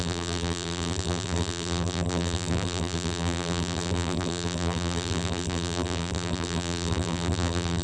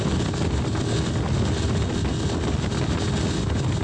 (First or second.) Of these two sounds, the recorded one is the second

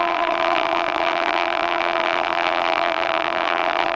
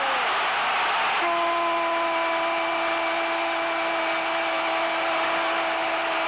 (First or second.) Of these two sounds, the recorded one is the second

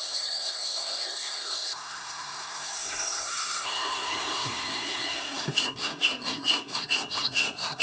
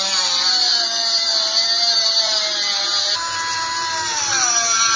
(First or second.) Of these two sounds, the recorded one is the second